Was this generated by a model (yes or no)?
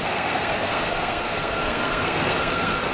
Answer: yes